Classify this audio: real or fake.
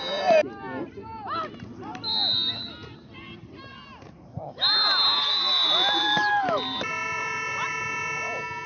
real